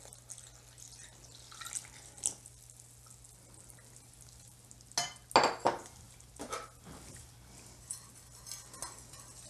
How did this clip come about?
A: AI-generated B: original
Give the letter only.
B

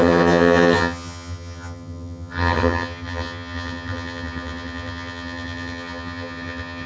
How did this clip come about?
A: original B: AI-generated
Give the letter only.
B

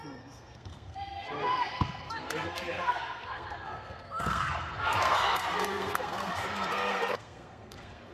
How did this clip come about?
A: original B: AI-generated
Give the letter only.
B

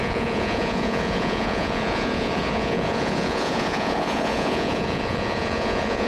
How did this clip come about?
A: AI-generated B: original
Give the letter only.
A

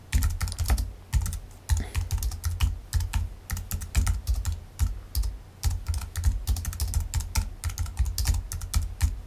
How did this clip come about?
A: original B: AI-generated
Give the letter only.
A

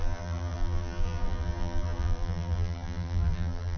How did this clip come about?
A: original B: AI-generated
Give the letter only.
B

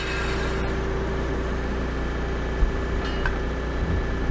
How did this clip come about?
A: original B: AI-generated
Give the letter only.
A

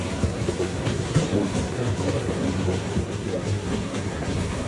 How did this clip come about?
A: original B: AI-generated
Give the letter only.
B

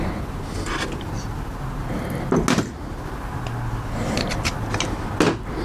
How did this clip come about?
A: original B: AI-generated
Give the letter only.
A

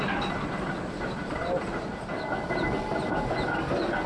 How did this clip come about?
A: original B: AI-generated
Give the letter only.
A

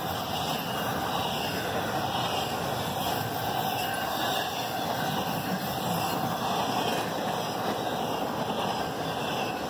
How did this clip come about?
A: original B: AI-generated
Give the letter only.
A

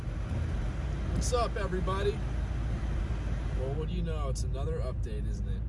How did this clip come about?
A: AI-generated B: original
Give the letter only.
B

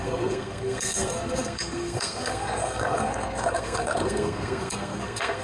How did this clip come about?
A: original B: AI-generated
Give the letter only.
B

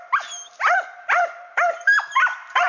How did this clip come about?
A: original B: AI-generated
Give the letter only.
A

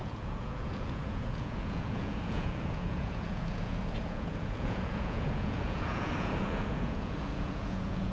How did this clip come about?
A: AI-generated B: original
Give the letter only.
A